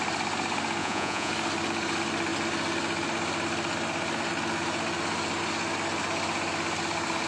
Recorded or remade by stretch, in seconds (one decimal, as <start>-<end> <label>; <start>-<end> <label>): 0.0-0.8 recorded; 0.8-1.3 remade; 1.3-7.3 recorded